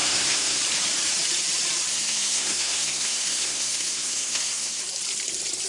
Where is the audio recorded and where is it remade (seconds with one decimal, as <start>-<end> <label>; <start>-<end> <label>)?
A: 0.0-0.6 remade; 0.6-1.9 recorded; 1.9-4.8 remade; 4.8-5.7 recorded